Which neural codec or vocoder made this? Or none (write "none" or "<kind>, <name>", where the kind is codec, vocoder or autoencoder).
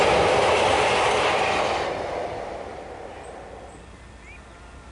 none